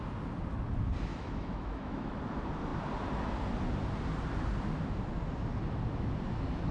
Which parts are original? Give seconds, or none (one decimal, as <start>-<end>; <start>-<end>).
0.0-1.1; 2.2-6.7